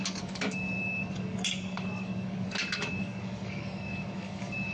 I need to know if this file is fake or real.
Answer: fake